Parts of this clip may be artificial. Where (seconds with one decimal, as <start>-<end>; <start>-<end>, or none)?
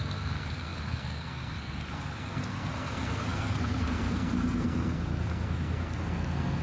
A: 0.0-6.6